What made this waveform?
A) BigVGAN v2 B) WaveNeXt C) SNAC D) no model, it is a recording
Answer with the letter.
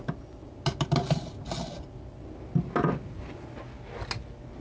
D